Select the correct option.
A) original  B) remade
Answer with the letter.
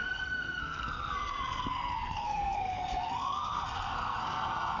B